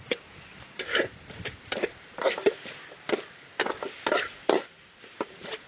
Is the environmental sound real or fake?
real